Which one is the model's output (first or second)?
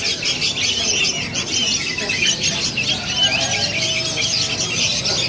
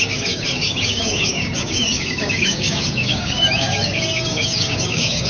second